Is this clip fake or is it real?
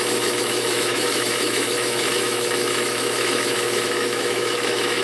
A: fake